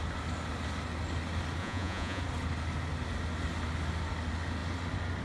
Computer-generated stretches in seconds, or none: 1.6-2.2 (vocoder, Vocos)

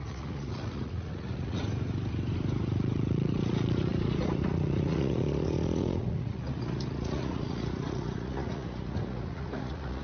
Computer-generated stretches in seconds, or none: 0.0-1.6 (vocoder, Vocos); 2.6-10.0

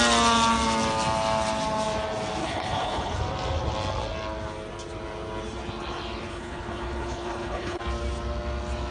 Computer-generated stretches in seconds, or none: 2.4-3.2 (codec, HILCodec); 6.3-7.8

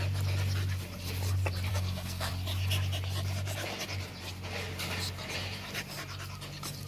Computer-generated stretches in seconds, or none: 1.7-2.3 (codec, SNAC)

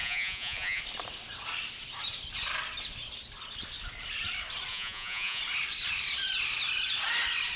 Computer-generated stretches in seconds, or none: 0.0-0.8 (vocoder, Vocos); 4.7-5.4

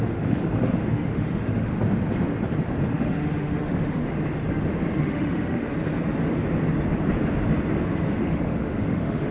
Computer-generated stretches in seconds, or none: 0.0-1.7 (autoencoder, DAC-VAE); 2.9-4.0; 5.0-5.7; 8.2-9.3